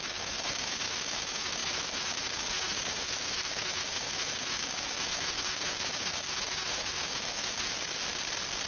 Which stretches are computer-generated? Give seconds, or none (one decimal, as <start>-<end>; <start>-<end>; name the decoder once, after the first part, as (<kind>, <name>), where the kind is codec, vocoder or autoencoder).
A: 0.0-7.7 (autoencoder, DAC-VAE)